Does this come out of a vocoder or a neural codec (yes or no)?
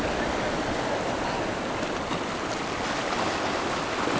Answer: no